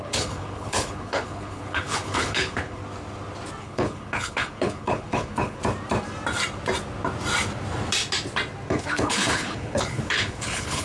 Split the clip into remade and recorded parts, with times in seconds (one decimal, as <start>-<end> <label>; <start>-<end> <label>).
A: 0.0-2.8 remade; 2.8-3.6 recorded; 3.6-5.6 remade; 5.6-8.7 recorded; 8.7-10.8 remade